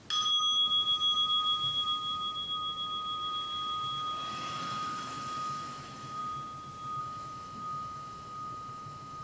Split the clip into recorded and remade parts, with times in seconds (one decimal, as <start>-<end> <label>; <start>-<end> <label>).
0.0-4.3 recorded; 4.3-6.2 remade; 6.2-7.0 recorded; 7.0-9.2 remade